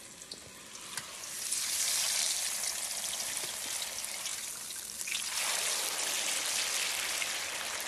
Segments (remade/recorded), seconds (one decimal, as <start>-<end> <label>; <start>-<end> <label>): 0.0-7.9 recorded

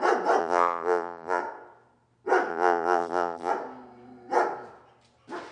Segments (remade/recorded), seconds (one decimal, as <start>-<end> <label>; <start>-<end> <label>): 0.0-0.4 recorded; 0.4-1.4 remade; 1.4-2.5 recorded; 2.5-3.5 remade; 3.5-5.5 recorded

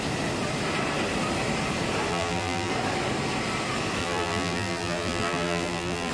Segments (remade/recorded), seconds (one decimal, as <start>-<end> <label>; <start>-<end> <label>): 0.0-2.1 recorded; 2.1-2.7 remade; 2.7-4.0 recorded; 4.0-6.1 remade

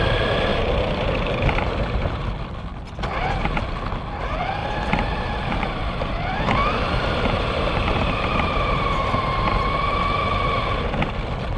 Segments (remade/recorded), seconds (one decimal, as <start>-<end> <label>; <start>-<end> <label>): 0.0-0.5 recorded; 0.5-2.2 remade; 2.2-4.6 recorded; 4.6-9.2 remade; 9.2-11.6 recorded